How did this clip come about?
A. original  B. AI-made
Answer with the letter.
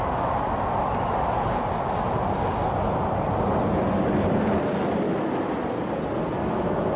A